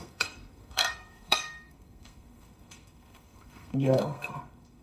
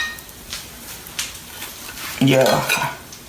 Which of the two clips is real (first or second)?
second